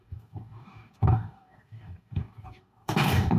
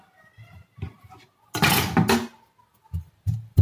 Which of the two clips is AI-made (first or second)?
first